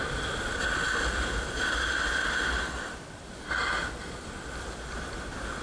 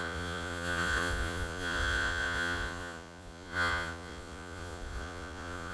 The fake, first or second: second